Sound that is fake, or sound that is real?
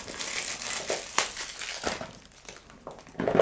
real